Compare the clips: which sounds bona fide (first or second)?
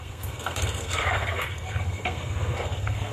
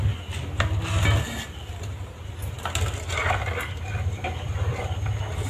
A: second